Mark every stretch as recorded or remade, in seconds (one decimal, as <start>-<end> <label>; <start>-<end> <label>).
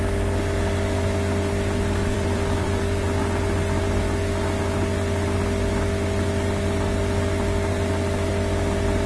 0.0-2.0 recorded; 2.0-3.2 remade; 3.2-9.1 recorded